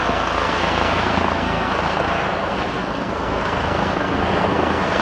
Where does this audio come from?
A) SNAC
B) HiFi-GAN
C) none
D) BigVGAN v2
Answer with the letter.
A